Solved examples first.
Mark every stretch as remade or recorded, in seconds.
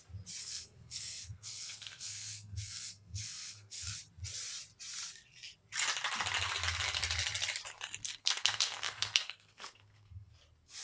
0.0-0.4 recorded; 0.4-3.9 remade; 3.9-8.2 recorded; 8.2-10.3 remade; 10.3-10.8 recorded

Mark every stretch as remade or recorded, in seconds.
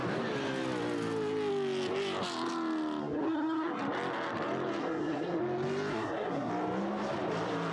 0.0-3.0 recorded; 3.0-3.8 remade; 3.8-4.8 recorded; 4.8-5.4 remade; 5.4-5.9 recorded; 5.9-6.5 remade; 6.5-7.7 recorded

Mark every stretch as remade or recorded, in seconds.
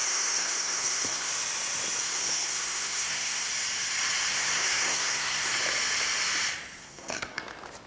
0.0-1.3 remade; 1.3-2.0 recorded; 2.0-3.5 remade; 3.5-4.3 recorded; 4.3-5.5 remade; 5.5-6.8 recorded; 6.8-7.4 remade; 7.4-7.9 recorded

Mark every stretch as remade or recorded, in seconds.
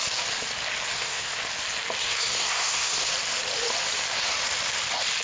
0.0-0.9 recorded; 0.9-1.4 remade; 1.4-2.0 recorded; 2.0-3.1 remade; 3.1-5.2 recorded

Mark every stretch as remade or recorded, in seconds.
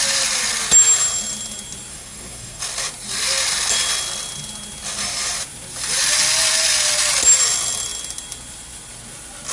0.0-1.9 recorded; 1.9-2.6 remade; 2.6-9.5 recorded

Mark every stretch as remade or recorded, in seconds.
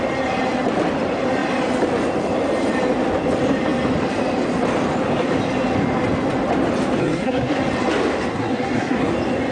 0.0-7.0 recorded; 7.0-7.6 remade; 7.6-8.3 recorded; 8.3-9.1 remade; 9.1-9.5 recorded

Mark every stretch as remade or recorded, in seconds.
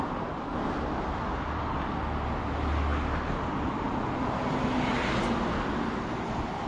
0.0-6.7 recorded